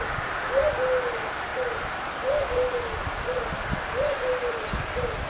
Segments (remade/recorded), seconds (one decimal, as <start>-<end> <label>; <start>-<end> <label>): 0.0-1.5 recorded; 1.5-4.7 remade; 4.7-5.3 recorded